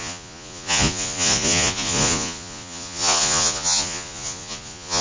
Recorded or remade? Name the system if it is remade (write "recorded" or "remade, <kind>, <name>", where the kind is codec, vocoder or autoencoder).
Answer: remade, vocoder, Vocos